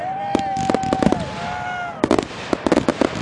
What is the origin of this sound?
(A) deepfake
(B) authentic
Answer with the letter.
B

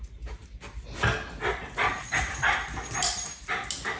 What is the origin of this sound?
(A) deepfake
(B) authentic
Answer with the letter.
B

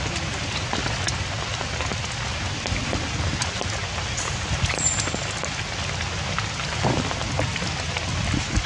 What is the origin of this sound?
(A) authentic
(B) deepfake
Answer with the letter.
A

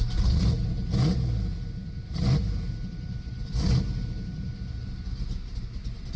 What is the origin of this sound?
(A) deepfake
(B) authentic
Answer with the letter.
B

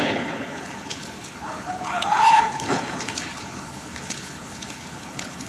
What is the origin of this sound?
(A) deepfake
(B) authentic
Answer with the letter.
A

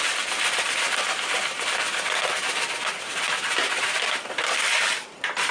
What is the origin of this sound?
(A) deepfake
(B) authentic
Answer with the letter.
B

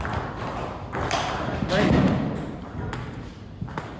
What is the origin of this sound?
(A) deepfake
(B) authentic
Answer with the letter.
B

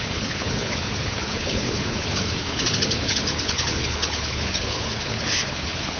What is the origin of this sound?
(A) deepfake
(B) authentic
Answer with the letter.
A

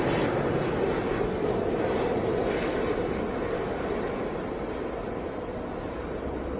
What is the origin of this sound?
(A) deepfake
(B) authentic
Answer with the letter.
B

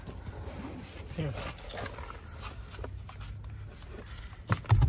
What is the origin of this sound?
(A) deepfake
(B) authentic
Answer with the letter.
B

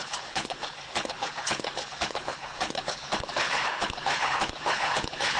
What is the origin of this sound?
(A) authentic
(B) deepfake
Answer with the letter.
B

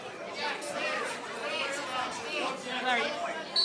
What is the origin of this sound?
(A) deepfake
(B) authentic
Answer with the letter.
B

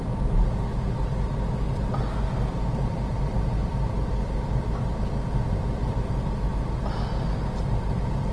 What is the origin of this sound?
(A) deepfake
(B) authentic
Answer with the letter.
B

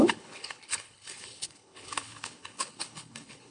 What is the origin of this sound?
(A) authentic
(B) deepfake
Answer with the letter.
B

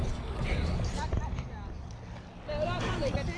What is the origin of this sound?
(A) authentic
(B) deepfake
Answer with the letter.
A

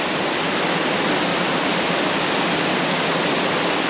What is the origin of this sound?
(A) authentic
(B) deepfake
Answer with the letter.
A